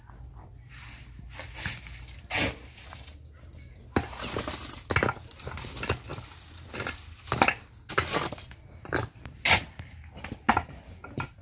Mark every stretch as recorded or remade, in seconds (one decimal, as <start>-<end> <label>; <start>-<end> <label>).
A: 0.0-11.4 recorded